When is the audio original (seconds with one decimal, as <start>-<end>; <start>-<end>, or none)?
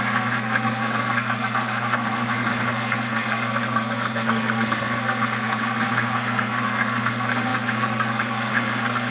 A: none